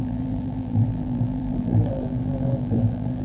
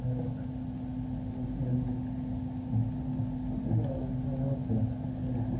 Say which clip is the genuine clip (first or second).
second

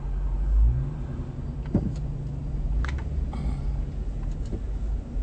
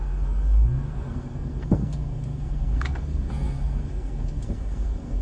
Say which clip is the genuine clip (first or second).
first